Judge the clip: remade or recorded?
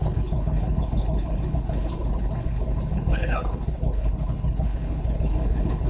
remade